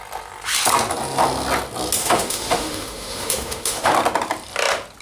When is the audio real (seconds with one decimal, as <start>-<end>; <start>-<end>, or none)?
0.0-2.0; 3.9-5.0